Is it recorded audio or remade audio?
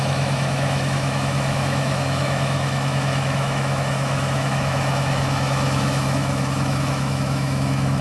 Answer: remade